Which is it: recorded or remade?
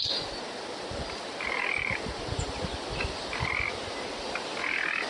recorded